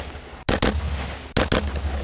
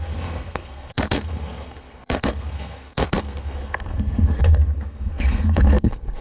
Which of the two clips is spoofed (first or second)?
second